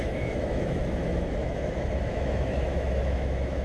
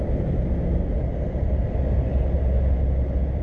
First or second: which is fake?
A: first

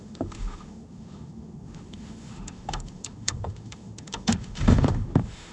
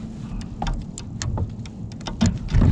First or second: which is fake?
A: first